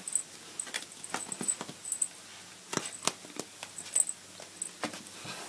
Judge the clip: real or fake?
real